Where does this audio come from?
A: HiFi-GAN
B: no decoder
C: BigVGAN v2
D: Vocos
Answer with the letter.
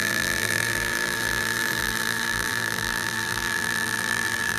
C